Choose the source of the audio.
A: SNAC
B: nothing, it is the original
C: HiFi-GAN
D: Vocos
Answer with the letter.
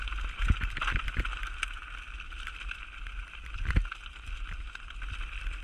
B